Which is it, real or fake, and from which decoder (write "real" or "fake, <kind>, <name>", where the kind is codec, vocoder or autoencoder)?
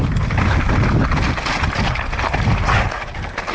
real